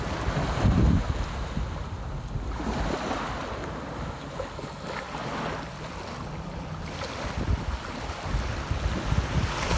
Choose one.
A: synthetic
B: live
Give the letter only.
B